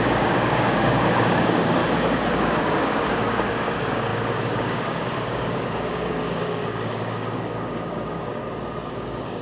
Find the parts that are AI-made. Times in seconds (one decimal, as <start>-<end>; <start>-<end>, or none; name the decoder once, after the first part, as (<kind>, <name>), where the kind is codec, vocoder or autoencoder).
0.0-1.8 (codec, DAC); 2.3-8.4; 8.9-9.4